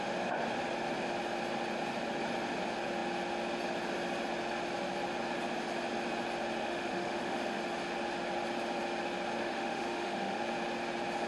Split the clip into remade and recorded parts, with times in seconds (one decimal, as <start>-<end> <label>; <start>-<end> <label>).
0.0-6.6 recorded; 6.6-7.6 remade; 7.6-9.4 recorded; 9.4-10.4 remade; 10.4-11.3 recorded